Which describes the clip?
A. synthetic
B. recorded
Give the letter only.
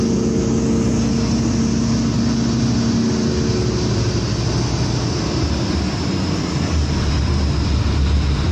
B